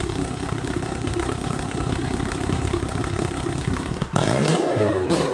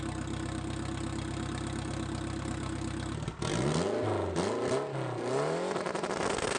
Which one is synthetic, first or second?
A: first